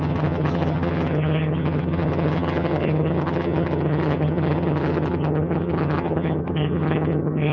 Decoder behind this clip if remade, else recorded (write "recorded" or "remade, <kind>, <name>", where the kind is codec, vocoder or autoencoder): remade, vocoder, HiFi-GAN